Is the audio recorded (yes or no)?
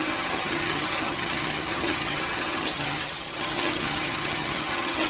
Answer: no